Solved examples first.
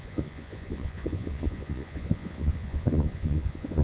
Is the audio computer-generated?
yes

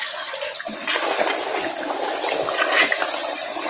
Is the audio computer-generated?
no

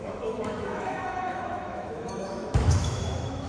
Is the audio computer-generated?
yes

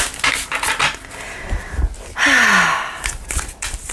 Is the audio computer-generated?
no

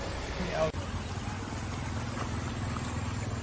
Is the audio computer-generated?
no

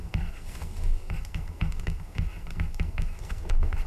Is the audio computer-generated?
yes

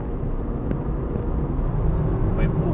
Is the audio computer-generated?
no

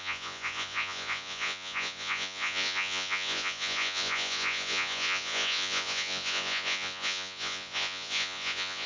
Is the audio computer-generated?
yes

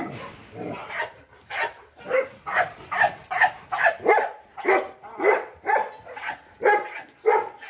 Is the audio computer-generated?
no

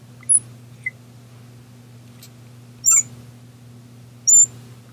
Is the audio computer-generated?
no